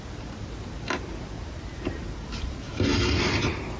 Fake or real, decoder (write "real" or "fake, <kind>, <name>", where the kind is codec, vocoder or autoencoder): real